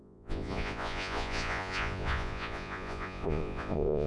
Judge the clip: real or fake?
fake